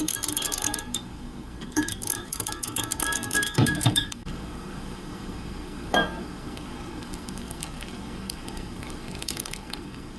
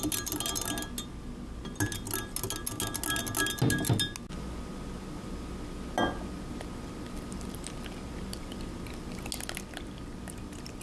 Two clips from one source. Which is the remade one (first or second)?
first